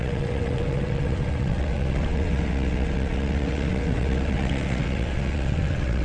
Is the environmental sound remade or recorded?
remade